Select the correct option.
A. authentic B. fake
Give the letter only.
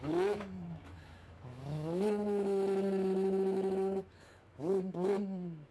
B